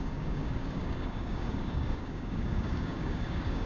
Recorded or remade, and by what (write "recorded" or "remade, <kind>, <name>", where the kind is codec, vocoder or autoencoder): remade, codec, DAC